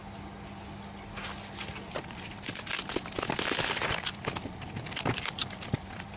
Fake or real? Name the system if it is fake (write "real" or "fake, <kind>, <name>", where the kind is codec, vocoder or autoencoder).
real